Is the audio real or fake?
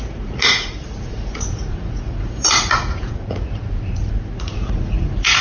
fake